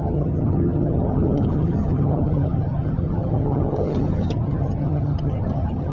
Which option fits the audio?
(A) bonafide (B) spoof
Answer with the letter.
B